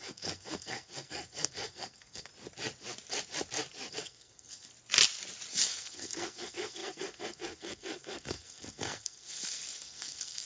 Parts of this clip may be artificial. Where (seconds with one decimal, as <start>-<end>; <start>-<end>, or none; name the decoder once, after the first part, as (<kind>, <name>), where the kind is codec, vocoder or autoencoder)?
0.0-2.3 (codec, SNAC); 3.9-4.7; 5.5-10.5